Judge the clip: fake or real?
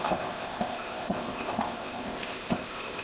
fake